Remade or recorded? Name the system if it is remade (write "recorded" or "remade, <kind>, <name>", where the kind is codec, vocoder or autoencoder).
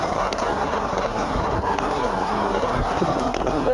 remade, codec, SNAC